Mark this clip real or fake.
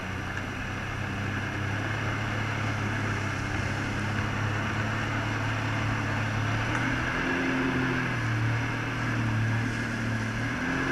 real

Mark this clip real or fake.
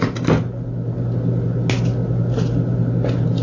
real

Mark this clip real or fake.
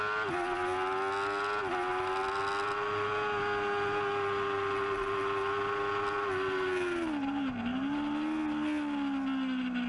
real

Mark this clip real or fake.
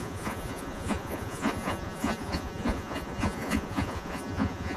fake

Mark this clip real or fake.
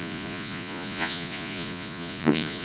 fake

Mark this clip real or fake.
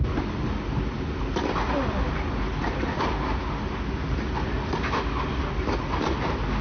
real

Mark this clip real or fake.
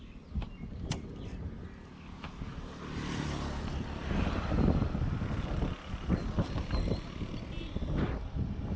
real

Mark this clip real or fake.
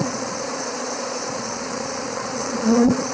fake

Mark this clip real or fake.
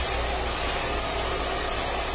real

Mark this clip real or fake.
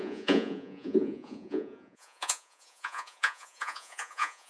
fake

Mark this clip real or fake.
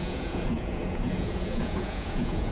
fake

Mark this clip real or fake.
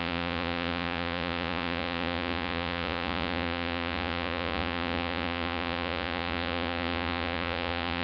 fake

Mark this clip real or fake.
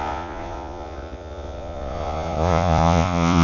fake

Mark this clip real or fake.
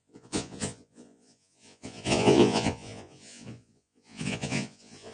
fake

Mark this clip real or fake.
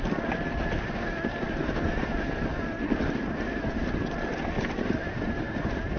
real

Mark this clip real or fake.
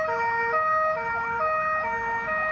real